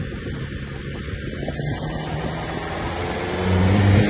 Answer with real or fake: real